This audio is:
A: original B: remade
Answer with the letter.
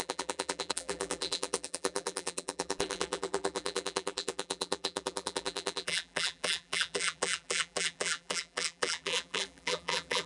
B